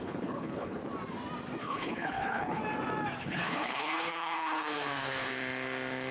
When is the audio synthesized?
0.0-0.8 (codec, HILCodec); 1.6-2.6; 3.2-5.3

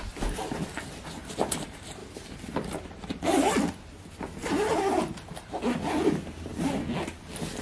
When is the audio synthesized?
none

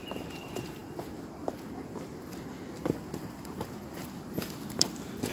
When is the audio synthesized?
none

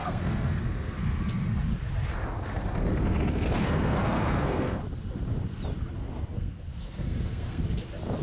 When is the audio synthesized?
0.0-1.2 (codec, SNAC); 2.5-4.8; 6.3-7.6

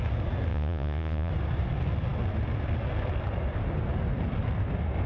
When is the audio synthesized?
0.5-1.3 (vocoder, Vocos)

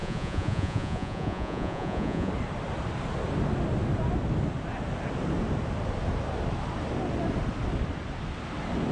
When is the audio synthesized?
0.0-2.3 (vocoder, Vocos)

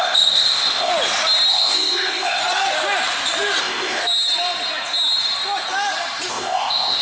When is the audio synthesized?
0.0-0.9 (codec, ZipCodec); 1.5-2.4; 3.6-4.0; 6.3-7.0

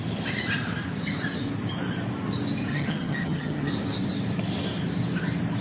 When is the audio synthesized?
2.7-3.7 (vocoder, HiFi-GAN)